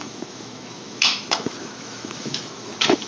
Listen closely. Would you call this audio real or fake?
fake